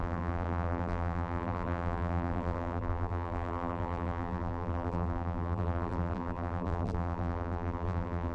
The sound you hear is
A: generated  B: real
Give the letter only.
A